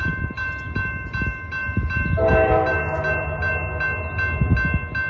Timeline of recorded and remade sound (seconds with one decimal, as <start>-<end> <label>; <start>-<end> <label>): 0.0-2.8 remade; 2.8-5.1 recorded